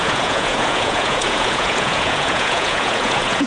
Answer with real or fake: fake